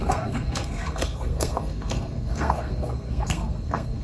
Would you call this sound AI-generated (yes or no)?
yes